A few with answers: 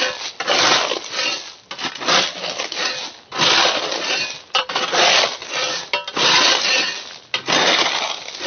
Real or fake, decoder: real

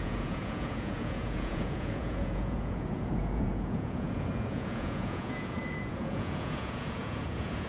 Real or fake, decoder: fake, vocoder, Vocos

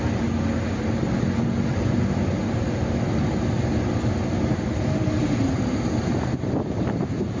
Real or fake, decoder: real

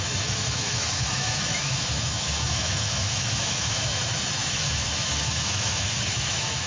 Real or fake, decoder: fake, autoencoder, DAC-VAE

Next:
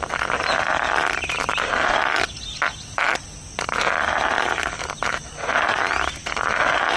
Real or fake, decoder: real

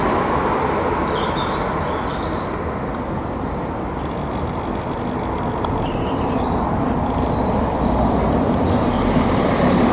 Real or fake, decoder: real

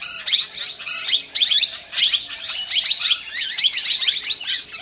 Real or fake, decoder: real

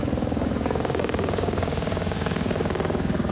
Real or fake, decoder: fake, codec, DAC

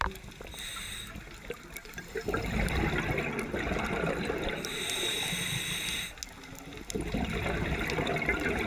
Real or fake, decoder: real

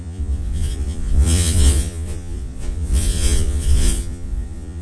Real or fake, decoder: fake, vocoder, Vocos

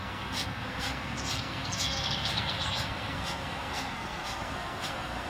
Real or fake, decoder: fake, codec, SNAC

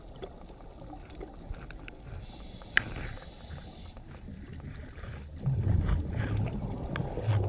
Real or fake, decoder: real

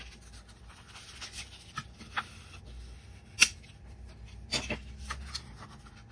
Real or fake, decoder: real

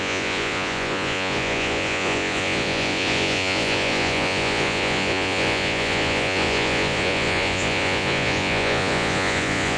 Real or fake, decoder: fake, vocoder, Vocos